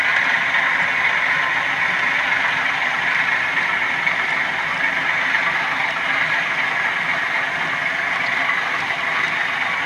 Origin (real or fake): real